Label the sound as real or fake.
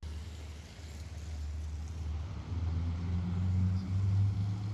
real